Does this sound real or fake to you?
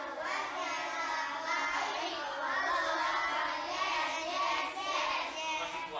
real